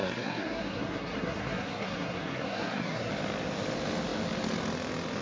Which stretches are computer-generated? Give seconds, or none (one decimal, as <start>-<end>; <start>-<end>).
0.0-3.1